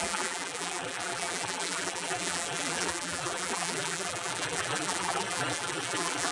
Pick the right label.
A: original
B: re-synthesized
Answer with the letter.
B